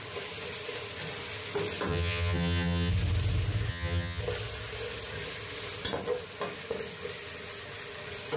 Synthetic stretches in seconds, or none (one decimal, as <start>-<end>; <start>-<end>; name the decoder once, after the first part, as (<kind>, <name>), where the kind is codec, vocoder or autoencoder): 1.9-2.9 (vocoder, HiFi-GAN); 3.7-4.2